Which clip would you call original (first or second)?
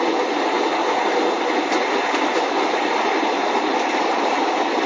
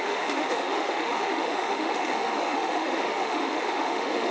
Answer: first